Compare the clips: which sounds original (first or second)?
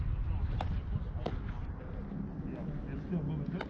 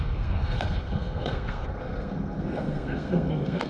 first